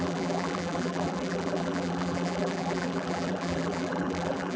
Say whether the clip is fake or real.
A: fake